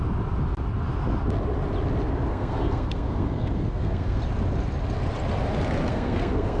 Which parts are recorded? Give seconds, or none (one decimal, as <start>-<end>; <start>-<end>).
0.0-2.3; 4.2-5.9